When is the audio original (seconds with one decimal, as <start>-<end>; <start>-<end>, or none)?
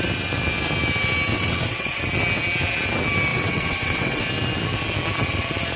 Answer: 0.0-1.3; 2.0-3.3; 4.3-5.8